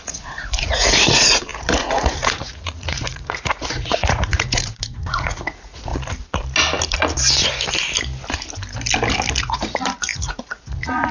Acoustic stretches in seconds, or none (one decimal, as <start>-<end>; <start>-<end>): 5.9-9.4